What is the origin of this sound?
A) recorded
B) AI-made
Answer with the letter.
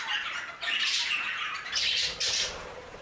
B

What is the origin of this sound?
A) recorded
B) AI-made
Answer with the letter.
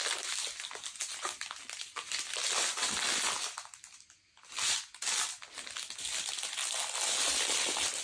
A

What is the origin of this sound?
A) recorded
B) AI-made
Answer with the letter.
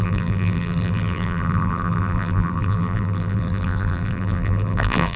B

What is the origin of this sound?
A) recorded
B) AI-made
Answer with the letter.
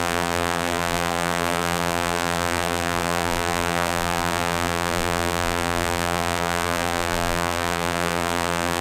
B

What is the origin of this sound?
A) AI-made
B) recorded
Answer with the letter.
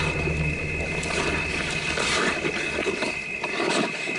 B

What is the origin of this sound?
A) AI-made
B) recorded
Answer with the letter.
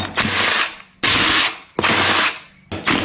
B